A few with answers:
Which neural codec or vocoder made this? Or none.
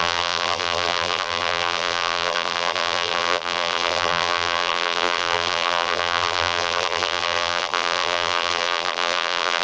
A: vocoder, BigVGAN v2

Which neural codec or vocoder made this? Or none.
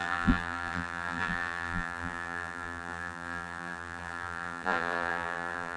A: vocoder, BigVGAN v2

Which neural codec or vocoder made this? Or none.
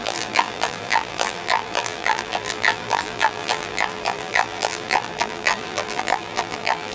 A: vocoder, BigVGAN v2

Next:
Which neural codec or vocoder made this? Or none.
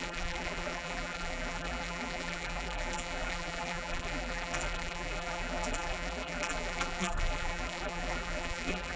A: vocoder, BigVGAN v2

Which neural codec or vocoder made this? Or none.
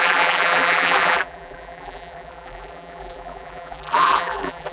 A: vocoder, BigVGAN v2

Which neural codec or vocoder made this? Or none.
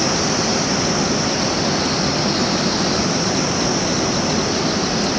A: none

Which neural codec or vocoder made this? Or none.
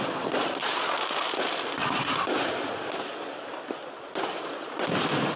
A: none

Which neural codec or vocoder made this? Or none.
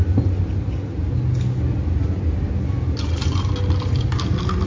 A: none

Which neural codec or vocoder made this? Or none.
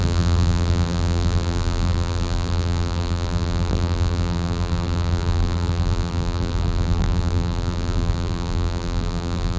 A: vocoder, BigVGAN v2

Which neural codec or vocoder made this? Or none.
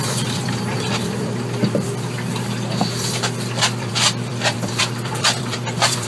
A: vocoder, BigVGAN v2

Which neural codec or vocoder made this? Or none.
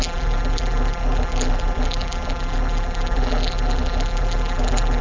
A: vocoder, BigVGAN v2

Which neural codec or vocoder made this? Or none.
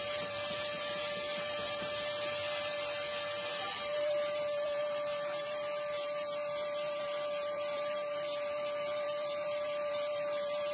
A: vocoder, BigVGAN v2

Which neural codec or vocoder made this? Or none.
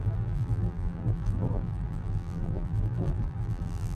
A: vocoder, BigVGAN v2